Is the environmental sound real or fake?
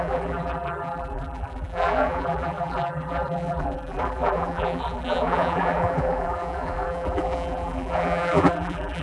fake